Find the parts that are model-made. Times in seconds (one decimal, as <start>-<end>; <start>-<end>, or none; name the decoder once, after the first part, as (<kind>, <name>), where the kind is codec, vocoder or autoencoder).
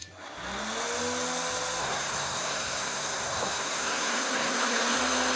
1.8-5.0 (codec, SNAC)